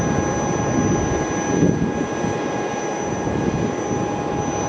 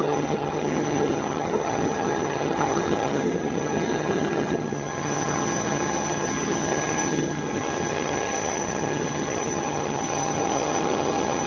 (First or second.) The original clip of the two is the first